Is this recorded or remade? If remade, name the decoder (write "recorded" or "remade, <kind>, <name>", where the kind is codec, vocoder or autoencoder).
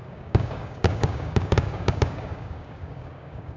remade, codec, DAC